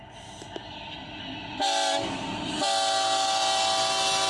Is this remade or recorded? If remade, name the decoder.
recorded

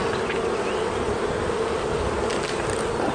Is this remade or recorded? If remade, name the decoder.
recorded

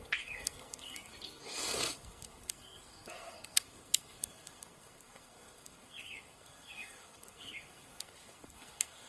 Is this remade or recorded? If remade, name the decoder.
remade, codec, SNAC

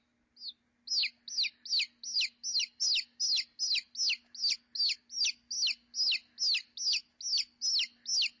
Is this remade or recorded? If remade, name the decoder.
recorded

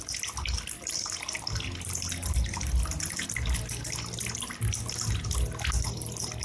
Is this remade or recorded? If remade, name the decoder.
recorded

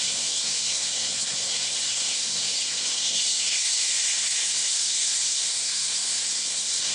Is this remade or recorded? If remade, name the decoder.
remade, codec, SNAC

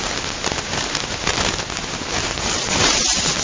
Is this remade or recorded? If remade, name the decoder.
recorded